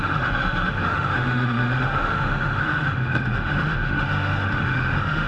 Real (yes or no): no